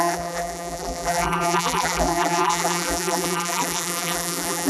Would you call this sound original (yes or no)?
no